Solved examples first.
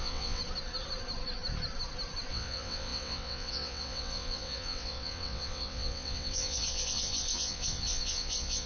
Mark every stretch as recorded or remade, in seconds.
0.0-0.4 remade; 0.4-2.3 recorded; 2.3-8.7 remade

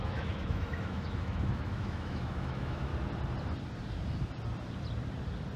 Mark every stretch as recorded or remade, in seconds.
0.0-2.9 remade; 2.9-5.6 recorded

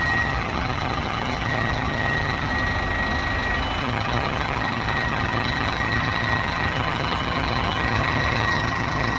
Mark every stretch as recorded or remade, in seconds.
0.0-2.5 remade; 2.5-3.8 recorded; 3.8-9.2 remade

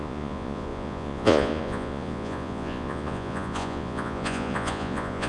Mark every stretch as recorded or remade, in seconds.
0.0-5.3 remade

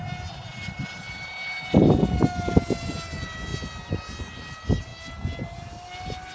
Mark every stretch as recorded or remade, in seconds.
0.0-6.3 recorded

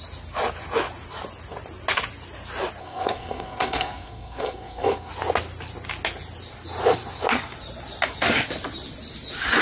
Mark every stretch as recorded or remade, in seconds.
0.0-2.8 recorded; 2.8-5.1 remade; 5.1-9.6 recorded